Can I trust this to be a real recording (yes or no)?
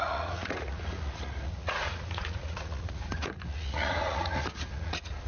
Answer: no